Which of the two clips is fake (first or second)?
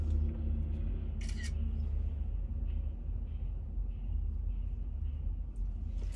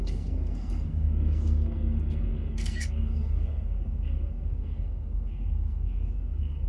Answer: second